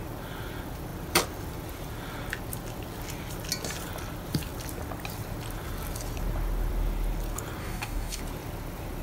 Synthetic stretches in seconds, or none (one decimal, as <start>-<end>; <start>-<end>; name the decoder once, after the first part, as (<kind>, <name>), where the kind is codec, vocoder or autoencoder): 7.6-8.2 (codec, DAC)